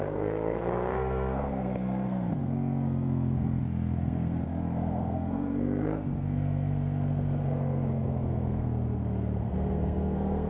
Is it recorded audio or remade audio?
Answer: remade